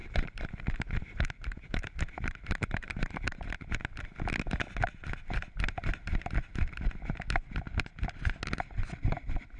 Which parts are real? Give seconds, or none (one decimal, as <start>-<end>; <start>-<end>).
3.4-9.6